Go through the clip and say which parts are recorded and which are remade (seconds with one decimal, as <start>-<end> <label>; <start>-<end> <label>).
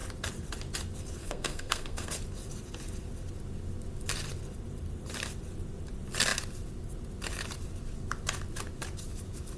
0.0-1.2 recorded; 1.2-2.1 remade; 2.1-9.6 recorded